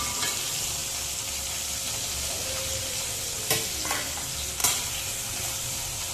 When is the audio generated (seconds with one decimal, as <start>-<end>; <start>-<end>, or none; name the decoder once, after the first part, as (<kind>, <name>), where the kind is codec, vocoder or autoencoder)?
none